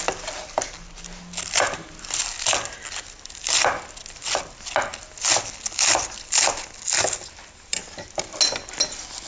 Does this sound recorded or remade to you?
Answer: recorded